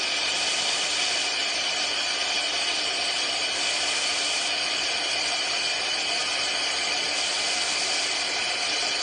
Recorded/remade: recorded